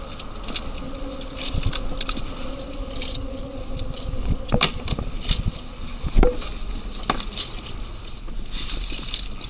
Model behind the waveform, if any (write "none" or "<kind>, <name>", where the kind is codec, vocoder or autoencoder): none